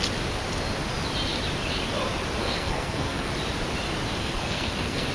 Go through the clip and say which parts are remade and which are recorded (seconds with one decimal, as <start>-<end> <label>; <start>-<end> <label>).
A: 0.0-2.4 recorded; 2.4-3.3 remade; 3.3-4.2 recorded; 4.2-5.1 remade